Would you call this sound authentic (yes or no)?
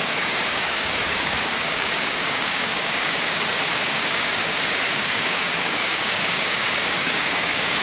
no